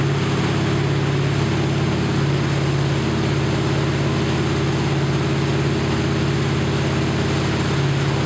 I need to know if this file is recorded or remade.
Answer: recorded